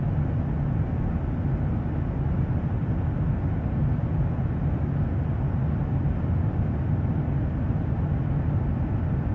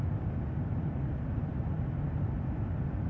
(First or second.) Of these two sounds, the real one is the first